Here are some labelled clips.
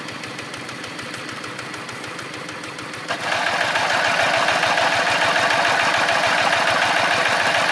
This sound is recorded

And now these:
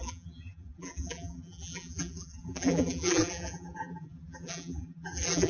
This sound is remade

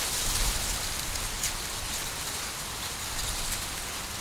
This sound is recorded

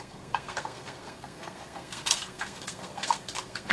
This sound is remade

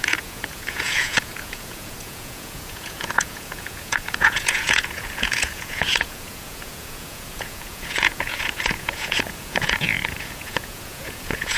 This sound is remade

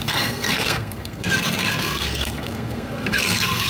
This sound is remade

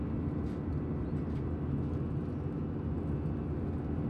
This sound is recorded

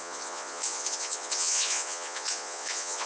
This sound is remade